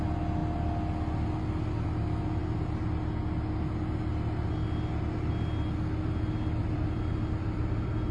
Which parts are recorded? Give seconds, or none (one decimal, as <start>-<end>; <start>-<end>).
0.0-6.6